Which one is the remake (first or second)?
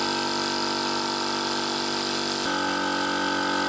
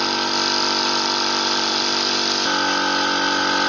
second